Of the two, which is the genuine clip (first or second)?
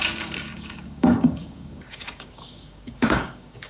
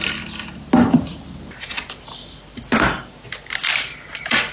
second